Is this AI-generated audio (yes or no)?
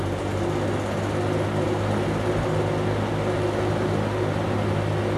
no